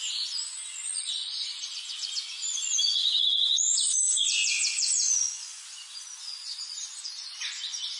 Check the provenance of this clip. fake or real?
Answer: fake